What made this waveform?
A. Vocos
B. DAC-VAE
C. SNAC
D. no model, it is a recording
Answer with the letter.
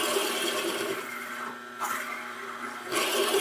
D